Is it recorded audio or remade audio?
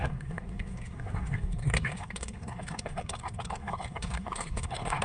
remade